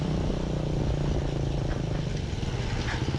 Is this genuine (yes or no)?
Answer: yes